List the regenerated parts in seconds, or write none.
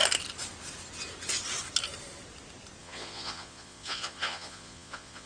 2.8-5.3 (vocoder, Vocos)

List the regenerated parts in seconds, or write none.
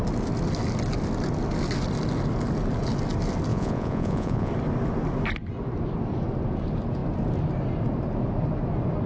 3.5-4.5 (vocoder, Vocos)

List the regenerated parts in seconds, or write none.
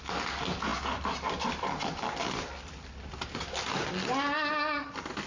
none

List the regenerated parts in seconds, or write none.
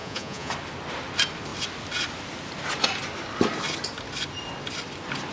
0.0-0.5 (vocoder, Vocos)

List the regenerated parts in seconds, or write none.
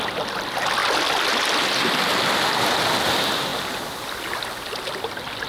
none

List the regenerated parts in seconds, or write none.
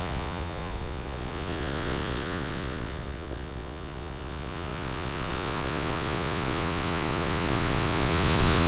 0.0-8.7 (vocoder, Vocos)